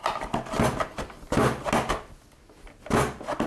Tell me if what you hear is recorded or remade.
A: recorded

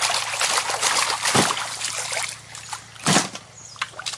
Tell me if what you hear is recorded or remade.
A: recorded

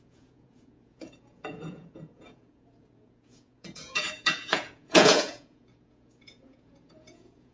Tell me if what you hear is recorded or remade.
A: remade